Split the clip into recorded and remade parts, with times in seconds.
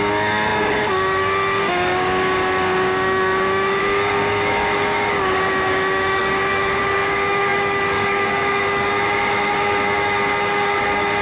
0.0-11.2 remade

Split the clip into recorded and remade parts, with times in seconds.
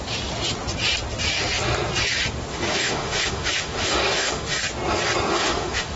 0.0-2.5 recorded; 2.5-4.6 remade; 4.6-5.3 recorded; 5.3-6.0 remade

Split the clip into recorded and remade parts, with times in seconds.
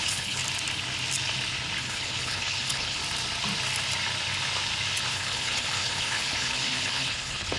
0.0-0.4 remade; 0.4-1.8 recorded; 1.8-3.0 remade; 3.0-5.1 recorded; 5.1-7.6 remade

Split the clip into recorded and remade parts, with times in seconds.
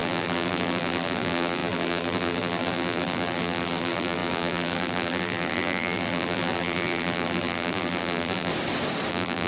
0.0-8.5 remade; 8.5-9.1 recorded; 9.1-9.5 remade